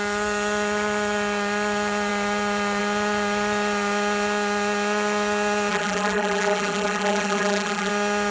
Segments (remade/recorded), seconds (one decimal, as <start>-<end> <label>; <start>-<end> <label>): 0.0-5.7 recorded; 5.7-7.9 remade; 7.9-8.3 recorded